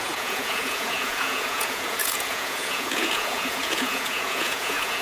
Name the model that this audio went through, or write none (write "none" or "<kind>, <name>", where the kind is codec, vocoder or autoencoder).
vocoder, Vocos